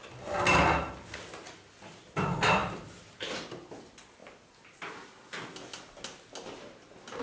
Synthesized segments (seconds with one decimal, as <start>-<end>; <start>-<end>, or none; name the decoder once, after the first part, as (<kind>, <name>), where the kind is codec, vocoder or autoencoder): none

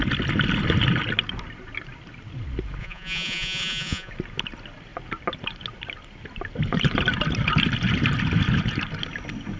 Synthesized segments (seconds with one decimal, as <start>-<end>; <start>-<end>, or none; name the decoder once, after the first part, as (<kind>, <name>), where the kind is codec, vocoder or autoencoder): 2.8-4.1 (vocoder, Vocos)

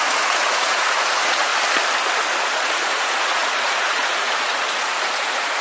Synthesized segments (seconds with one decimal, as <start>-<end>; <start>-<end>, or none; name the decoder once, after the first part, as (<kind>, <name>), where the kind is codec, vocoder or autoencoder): 0.0-1.5 (vocoder, Vocos); 2.4-5.6

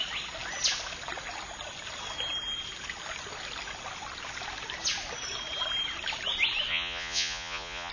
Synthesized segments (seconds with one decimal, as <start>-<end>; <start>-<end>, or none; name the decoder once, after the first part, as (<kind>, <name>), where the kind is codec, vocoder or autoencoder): 6.7-7.9 (vocoder, Vocos)